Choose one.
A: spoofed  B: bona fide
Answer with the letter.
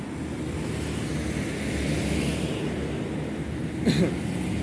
B